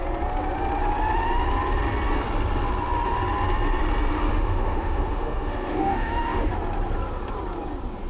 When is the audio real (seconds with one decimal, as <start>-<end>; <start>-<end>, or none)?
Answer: 0.0-4.3; 6.5-8.1